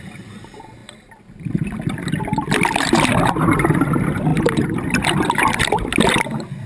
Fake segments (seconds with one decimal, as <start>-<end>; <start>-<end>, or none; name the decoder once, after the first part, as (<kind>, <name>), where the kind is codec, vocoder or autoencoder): none